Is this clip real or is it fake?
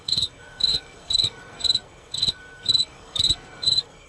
fake